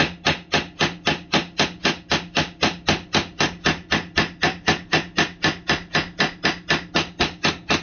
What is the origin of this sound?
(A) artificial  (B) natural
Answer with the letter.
B